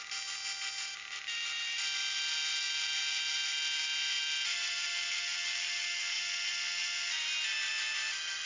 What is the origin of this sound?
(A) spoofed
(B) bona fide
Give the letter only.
B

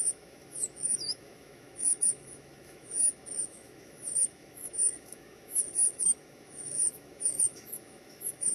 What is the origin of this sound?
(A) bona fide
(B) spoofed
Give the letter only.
B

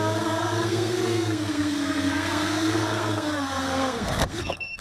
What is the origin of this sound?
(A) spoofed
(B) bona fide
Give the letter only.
A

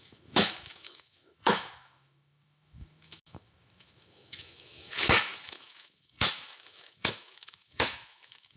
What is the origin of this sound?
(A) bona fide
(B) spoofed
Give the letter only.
B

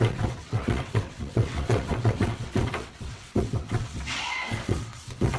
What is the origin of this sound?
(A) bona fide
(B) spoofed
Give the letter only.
B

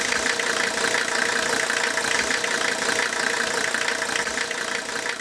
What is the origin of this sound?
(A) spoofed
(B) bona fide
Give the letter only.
B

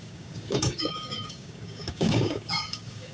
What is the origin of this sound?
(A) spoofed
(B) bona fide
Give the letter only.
A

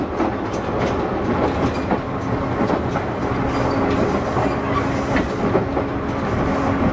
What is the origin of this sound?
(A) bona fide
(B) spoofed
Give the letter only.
A